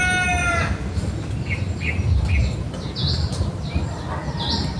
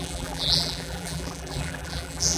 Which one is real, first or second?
first